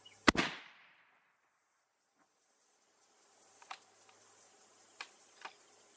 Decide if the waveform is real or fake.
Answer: real